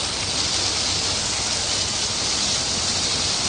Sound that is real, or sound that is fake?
real